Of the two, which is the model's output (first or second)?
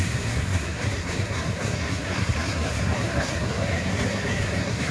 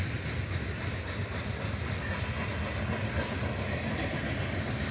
first